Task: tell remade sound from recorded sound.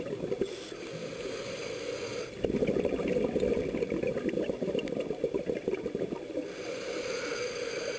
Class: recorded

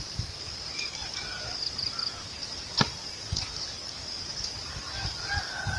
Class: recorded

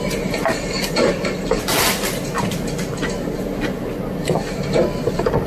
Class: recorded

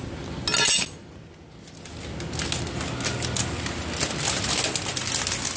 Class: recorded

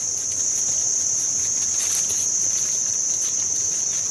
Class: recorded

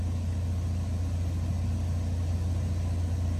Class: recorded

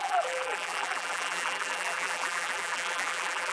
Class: remade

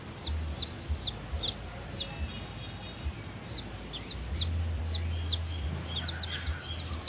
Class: recorded